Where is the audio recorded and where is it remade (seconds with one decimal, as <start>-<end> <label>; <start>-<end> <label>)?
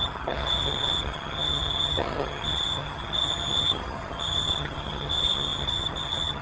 0.0-6.4 remade